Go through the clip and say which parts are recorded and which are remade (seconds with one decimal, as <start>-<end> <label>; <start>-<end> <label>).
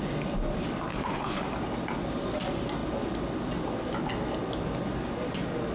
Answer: 0.0-0.9 recorded; 0.9-1.4 remade; 1.4-5.7 recorded